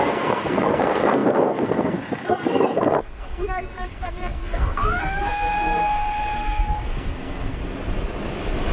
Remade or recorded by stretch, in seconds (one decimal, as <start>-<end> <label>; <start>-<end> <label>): 0.0-7.6 remade; 7.6-8.7 recorded